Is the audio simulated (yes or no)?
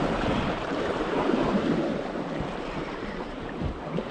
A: yes